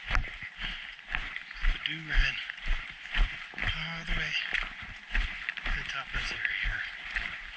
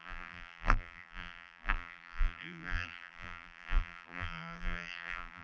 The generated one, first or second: second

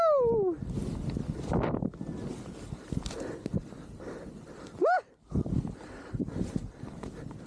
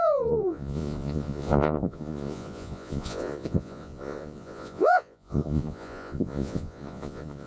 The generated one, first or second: second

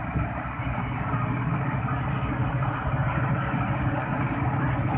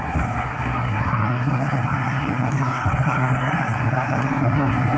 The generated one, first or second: second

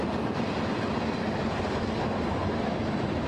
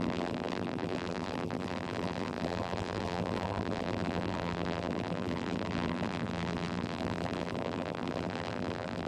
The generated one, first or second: second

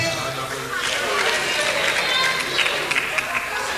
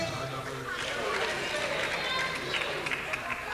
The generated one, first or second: second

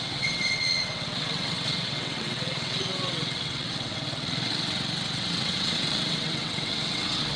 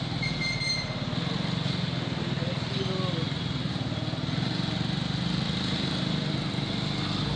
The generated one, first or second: first